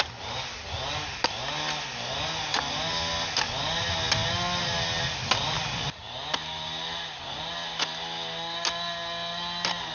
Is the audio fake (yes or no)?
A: no